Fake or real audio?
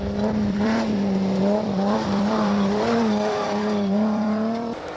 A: fake